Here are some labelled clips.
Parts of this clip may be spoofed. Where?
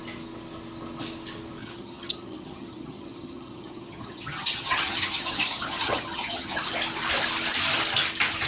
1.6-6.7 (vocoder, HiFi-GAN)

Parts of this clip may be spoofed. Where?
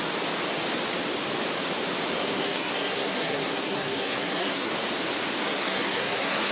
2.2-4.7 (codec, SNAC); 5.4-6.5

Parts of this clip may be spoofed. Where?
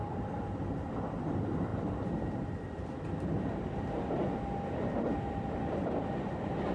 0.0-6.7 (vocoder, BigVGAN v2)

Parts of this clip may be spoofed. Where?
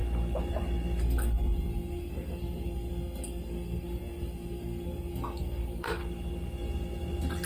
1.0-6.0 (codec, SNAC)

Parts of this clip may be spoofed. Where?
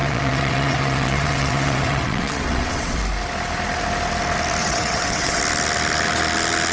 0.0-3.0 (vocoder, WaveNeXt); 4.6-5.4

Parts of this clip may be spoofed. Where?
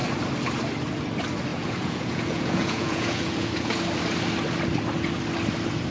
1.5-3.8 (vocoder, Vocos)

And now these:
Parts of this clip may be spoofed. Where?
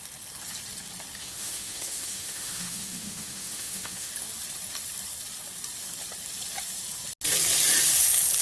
1.2-4.1 (autoencoder, DAC-VAE)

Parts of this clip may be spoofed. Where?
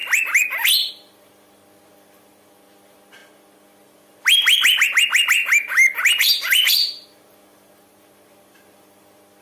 none